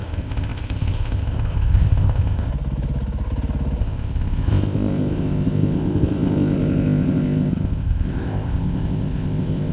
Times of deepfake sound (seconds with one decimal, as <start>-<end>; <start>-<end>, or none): 0.0-2.5; 3.8-9.7